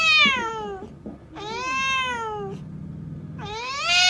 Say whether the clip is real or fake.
real